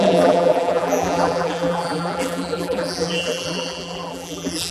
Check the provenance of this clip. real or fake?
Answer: fake